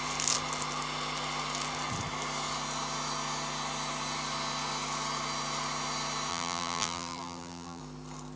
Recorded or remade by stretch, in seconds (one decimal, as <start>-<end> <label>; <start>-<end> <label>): 0.0-6.3 recorded; 6.3-7.8 remade; 7.8-8.4 recorded